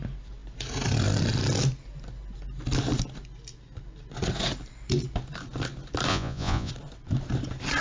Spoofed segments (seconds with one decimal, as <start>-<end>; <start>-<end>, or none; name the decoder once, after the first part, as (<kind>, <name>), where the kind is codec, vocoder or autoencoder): 6.1-6.7 (vocoder, Vocos)

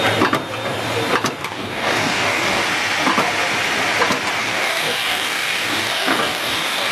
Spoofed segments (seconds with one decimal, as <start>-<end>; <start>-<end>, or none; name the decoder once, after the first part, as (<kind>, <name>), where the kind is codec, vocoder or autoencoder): 1.4-2.6 (codec, DAC); 4.4-6.9

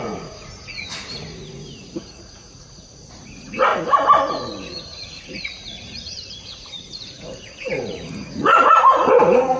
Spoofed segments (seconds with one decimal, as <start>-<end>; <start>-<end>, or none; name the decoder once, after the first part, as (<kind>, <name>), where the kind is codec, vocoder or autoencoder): 0.0-3.7 (vocoder, Vocos); 4.3-9.6

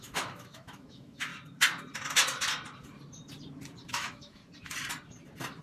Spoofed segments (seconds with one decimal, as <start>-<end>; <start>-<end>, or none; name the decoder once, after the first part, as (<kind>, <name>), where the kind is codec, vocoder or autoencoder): 0.0-1.3 (autoencoder, DAC-VAE); 3.9-4.4

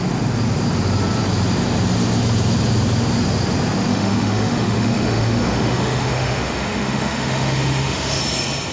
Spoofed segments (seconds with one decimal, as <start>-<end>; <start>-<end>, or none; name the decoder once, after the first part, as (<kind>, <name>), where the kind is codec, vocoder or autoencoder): 3.9-8.2 (autoencoder, DAC-VAE)

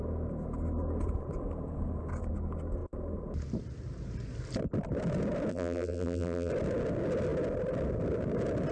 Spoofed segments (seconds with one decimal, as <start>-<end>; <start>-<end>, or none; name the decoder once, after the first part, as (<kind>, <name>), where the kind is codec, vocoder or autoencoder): 5.5-6.5 (vocoder, BigVGAN v2)

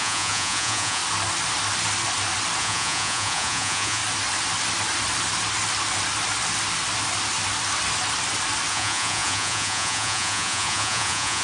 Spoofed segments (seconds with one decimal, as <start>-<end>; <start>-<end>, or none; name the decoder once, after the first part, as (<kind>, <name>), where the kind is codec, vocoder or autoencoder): 0.0-1.0 (vocoder, Vocos); 2.6-4.0; 8.7-11.4